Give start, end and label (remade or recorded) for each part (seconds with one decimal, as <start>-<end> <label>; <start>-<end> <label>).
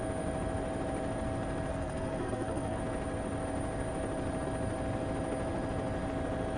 0.0-1.7 recorded; 1.7-2.8 remade; 2.8-6.6 recorded